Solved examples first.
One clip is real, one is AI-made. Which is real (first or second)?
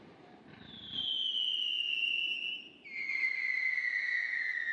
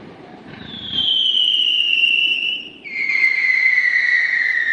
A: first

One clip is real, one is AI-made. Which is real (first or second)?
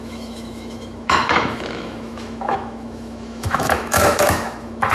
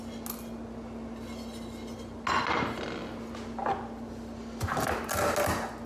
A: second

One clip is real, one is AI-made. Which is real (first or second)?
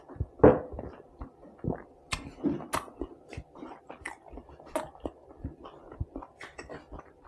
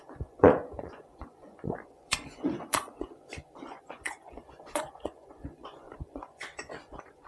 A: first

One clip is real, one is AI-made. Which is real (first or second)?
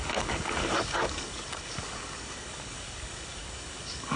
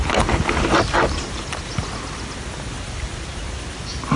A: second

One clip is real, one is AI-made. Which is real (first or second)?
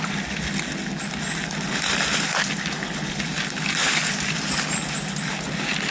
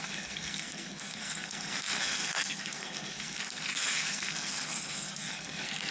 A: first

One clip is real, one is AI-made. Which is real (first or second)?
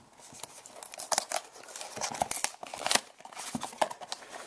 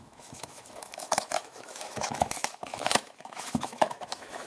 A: first